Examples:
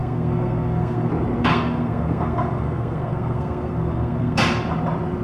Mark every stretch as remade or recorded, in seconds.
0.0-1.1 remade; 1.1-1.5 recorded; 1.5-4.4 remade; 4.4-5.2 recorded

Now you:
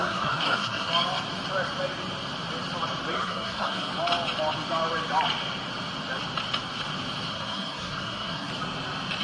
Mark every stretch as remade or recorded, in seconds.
0.0-0.9 remade; 0.9-3.1 recorded; 3.1-3.9 remade; 3.9-7.3 recorded; 7.3-8.5 remade; 8.5-9.2 recorded